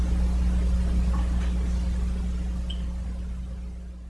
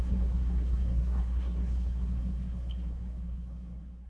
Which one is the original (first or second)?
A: first